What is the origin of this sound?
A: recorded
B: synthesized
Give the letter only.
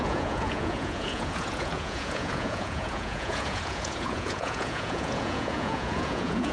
B